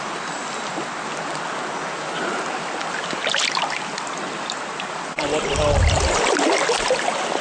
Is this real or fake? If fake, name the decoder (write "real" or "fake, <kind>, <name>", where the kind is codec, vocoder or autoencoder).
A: real